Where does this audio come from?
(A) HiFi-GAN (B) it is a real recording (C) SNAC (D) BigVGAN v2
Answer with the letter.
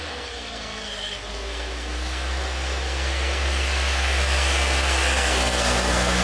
C